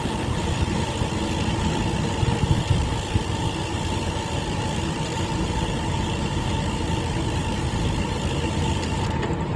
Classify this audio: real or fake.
real